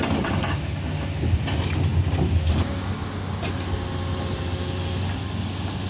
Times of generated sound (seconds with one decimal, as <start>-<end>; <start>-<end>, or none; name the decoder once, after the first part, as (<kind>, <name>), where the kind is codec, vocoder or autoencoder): none